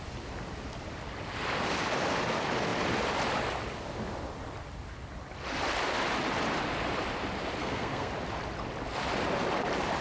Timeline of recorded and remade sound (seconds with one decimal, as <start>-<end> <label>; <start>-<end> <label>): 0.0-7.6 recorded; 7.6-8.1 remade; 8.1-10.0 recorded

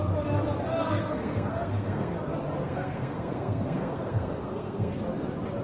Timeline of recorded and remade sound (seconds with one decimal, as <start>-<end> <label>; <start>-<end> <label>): 0.0-0.7 recorded; 0.7-2.1 remade; 2.1-2.6 recorded; 2.6-4.9 remade; 4.9-5.6 recorded

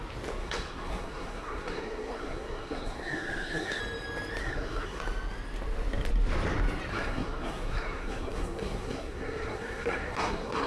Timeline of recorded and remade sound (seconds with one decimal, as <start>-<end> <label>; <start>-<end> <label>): 0.0-0.4 recorded; 0.4-3.8 remade; 3.8-4.4 recorded; 4.4-5.0 remade; 5.0-6.9 recorded; 6.9-10.7 remade